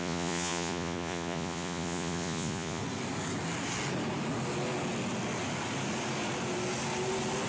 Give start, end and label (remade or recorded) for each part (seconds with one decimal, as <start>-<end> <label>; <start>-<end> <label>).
0.0-2.8 remade; 2.8-7.5 recorded